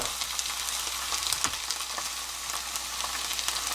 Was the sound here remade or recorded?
recorded